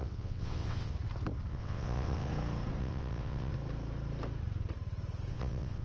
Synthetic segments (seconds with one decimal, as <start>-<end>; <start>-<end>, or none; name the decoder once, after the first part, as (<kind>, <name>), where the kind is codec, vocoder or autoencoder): 0.0-0.9 (vocoder, WaveNeXt); 1.5-2.3; 2.8-3.5; 5.3-5.8